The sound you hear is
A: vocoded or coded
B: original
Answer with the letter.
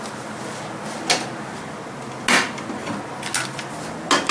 B